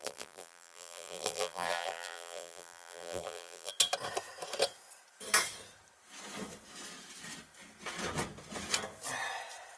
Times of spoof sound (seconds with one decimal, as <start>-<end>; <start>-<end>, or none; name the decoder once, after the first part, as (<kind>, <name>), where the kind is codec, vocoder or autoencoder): 0.0-3.7 (vocoder, BigVGAN v2)